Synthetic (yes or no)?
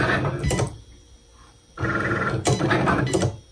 no